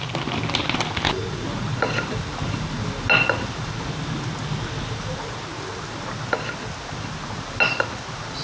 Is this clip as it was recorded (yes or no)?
yes